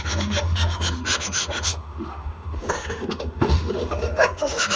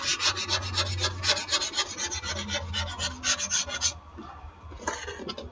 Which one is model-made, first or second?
first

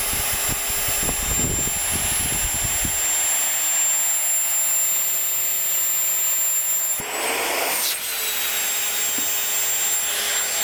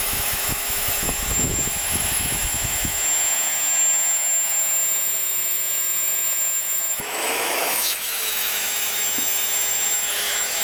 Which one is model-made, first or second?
second